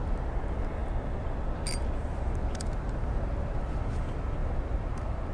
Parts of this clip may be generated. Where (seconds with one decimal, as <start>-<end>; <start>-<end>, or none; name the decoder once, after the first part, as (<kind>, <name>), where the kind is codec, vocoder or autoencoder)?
none